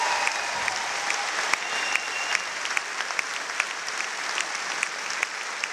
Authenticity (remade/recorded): recorded